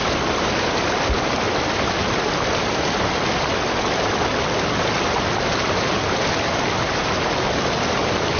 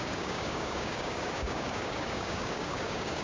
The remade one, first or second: second